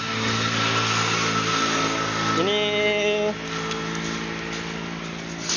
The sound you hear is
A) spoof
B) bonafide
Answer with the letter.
B